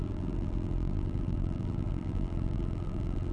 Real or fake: fake